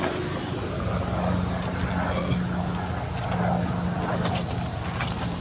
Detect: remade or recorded recorded